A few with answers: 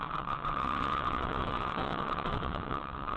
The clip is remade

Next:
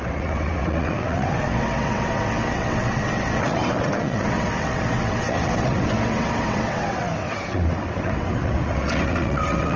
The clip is remade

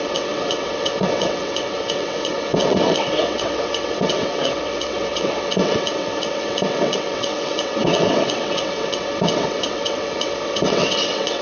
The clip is remade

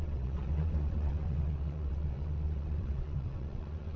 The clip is remade